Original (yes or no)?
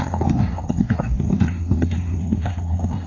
no